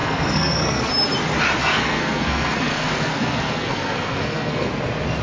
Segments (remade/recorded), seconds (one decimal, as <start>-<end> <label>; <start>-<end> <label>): 0.0-0.9 remade; 0.9-1.6 recorded; 1.6-4.7 remade; 4.7-5.2 recorded